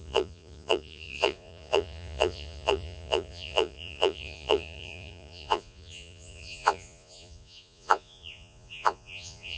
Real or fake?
fake